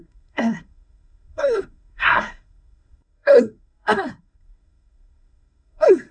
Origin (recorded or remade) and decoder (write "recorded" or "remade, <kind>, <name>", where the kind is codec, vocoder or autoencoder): remade, codec, SNAC